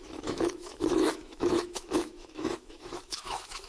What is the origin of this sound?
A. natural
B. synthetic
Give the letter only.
B